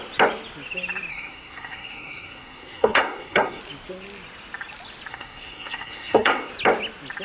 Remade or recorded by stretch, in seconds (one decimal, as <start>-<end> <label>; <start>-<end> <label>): 0.0-1.1 recorded; 1.1-3.6 remade; 3.6-5.1 recorded; 5.1-6.5 remade; 6.5-7.2 recorded